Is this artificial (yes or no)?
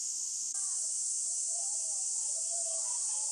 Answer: yes